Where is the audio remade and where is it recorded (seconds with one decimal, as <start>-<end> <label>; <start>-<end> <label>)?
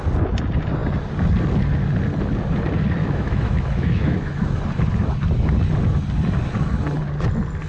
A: 0.0-3.0 recorded; 3.0-4.6 remade; 4.6-7.7 recorded